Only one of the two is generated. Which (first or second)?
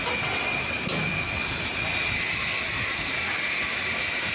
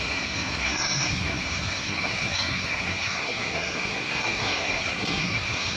second